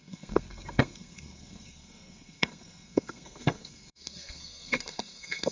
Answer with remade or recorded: remade